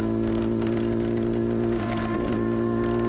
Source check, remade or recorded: recorded